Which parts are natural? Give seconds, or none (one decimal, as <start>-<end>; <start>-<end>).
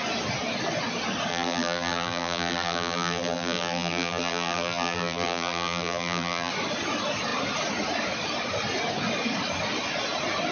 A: 0.0-1.3; 6.5-10.5